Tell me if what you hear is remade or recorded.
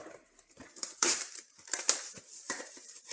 remade